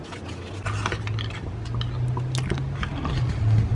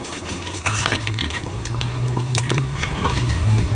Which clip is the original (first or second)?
first